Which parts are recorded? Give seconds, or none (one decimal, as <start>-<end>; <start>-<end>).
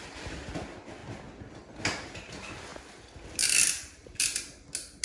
0.0-5.0